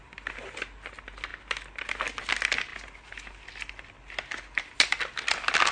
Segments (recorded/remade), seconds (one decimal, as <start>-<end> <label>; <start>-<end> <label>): 0.0-5.7 recorded